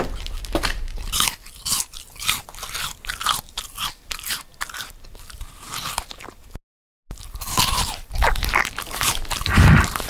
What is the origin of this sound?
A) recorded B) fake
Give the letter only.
A